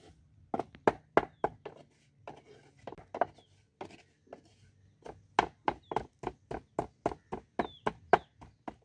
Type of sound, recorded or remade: recorded